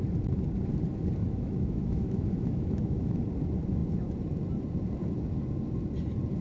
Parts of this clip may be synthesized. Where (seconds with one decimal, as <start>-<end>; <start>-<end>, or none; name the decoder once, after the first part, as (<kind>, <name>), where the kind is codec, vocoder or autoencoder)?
1.2-3.2 (autoencoder, DAC-VAE)